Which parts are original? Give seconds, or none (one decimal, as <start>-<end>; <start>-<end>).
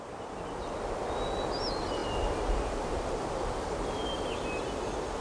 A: 0.0-5.2